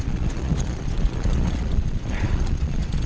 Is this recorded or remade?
remade